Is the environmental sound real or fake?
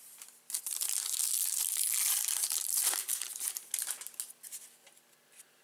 real